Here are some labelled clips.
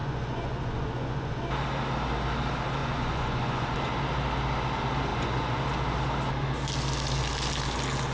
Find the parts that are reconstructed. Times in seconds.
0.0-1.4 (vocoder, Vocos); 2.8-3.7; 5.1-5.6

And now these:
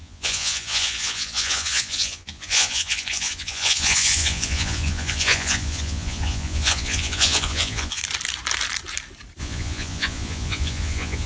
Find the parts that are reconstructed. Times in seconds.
0.0-8.0 (vocoder, Vocos); 9.4-11.3

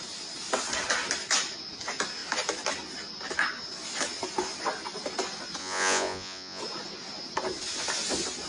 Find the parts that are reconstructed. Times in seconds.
5.6-6.6 (vocoder, Vocos)

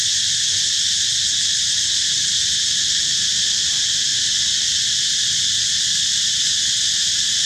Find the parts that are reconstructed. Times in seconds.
none

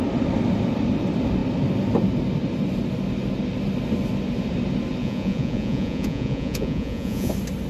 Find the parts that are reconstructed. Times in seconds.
5.0-7.3 (vocoder, Vocos)